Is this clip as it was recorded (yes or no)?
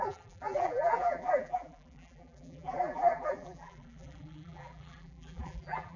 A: no